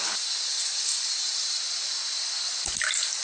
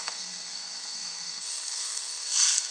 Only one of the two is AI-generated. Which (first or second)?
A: second